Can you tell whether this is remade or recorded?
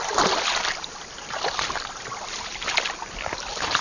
recorded